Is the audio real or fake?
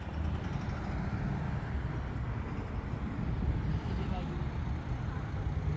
fake